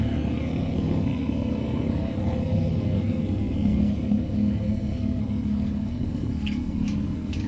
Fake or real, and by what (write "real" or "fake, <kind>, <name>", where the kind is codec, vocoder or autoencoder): fake, codec, SNAC